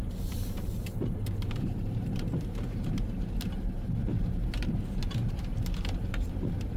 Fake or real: fake